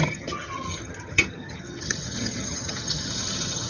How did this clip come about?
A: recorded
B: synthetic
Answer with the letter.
B